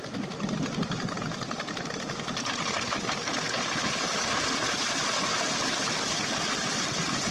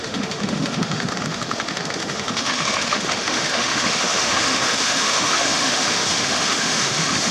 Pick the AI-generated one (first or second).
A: second